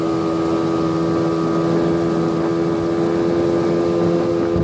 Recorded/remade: recorded